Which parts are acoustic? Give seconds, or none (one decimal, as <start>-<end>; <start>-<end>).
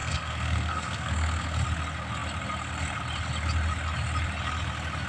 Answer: 1.6-5.1